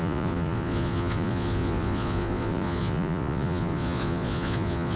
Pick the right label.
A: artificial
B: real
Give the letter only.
A